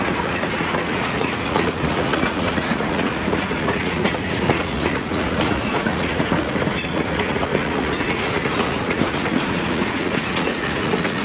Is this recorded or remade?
remade